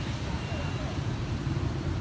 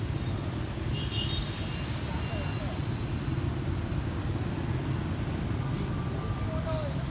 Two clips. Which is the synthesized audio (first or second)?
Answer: first